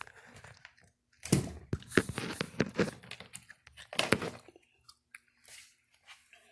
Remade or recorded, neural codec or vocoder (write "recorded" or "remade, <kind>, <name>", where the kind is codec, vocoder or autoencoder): recorded